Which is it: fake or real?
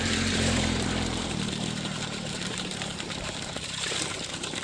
fake